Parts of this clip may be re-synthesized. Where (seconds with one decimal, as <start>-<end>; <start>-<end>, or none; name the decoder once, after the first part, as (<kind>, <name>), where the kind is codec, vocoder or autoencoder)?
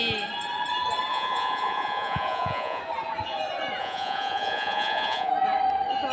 1.1-2.8 (vocoder, Vocos); 3.8-5.3